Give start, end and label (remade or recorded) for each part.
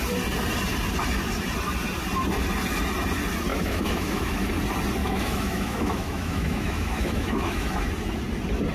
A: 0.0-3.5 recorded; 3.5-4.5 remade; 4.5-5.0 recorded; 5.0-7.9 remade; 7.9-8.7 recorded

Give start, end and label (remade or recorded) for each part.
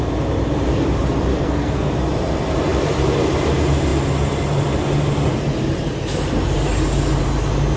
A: 0.0-1.3 recorded; 1.3-1.9 remade; 1.9-7.8 recorded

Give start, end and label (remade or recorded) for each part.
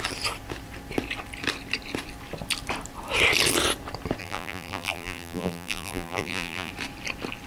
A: 0.0-4.2 recorded; 4.2-6.7 remade; 6.7-7.5 recorded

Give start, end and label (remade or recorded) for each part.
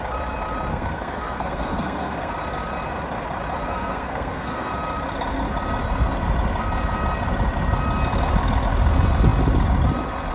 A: 0.0-0.7 recorded; 0.7-2.3 remade; 2.3-3.7 recorded; 3.7-4.7 remade; 4.7-10.3 recorded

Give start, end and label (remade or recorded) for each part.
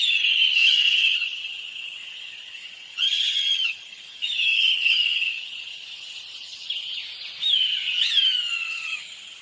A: 0.0-7.0 remade; 7.0-7.5 recorded; 7.5-9.4 remade